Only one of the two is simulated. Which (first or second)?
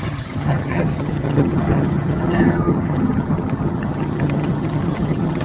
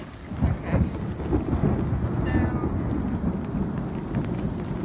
first